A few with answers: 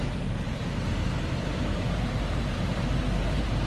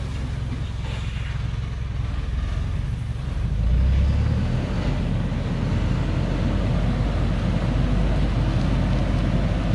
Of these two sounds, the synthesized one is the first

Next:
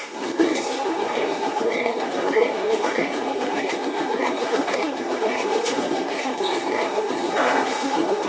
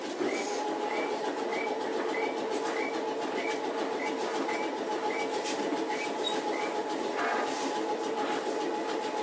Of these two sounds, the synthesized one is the first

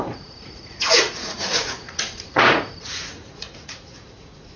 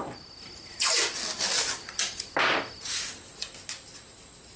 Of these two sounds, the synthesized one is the first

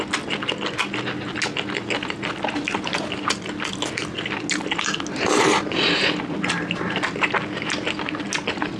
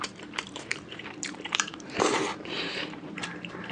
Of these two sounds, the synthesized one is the second